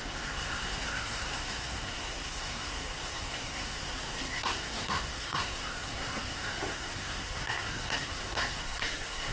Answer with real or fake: fake